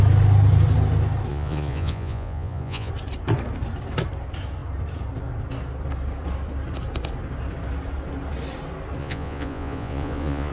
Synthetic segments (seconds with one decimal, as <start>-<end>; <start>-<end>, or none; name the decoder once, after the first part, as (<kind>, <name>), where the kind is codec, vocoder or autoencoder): 1.3-2.9 (vocoder, Vocos); 9.0-10.5